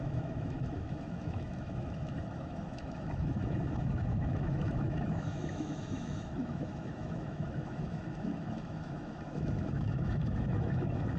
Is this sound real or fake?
fake